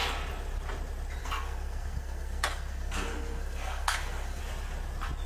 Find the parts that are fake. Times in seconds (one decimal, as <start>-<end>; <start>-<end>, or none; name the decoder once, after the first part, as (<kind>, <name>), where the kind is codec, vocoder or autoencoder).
1.2-4.4 (codec, SNAC)